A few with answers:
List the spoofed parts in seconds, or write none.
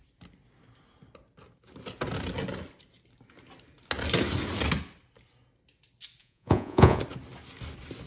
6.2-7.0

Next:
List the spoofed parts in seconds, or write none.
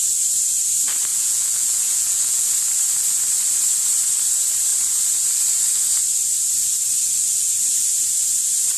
1.1-2.5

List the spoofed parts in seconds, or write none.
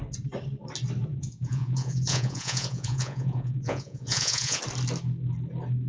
1.1-4.6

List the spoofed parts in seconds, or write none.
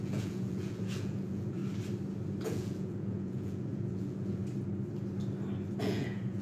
0.0-1.6; 2.4-4.4; 5.8-6.4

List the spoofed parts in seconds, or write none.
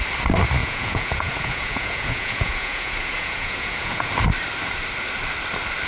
0.6-4.1